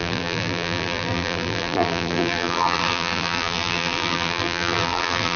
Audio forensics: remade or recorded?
remade